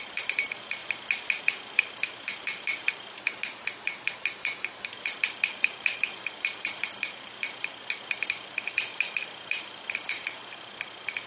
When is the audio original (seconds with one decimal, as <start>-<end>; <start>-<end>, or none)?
0.8-1.4